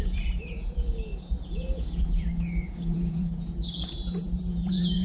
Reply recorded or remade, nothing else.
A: remade